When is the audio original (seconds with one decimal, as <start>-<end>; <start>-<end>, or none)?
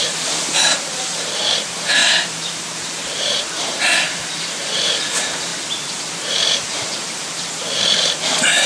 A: 5.5-6.1